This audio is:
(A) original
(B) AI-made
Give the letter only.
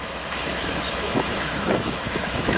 B